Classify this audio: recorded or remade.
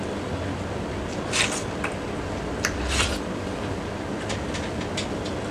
recorded